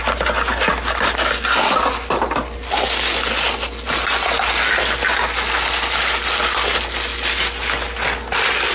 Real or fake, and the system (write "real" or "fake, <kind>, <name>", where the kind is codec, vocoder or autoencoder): real